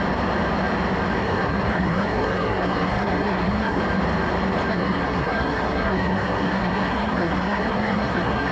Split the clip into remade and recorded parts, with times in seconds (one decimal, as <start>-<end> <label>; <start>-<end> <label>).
0.0-1.2 recorded; 1.2-3.8 remade; 3.8-4.7 recorded; 4.7-8.5 remade